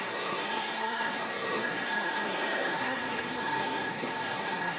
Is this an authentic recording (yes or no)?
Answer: no